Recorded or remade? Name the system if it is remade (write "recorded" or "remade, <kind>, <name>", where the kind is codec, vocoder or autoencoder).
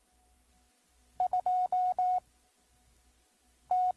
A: recorded